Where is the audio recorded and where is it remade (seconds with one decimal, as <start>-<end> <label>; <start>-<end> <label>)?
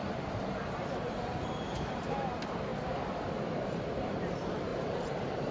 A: 0.0-2.7 remade; 2.7-3.4 recorded; 3.4-5.5 remade